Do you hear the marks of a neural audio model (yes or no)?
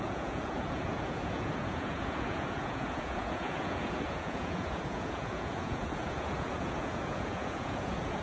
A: yes